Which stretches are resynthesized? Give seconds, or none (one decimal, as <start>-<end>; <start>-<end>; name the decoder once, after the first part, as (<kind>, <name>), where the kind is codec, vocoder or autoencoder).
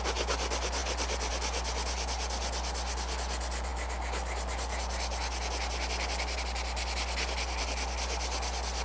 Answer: none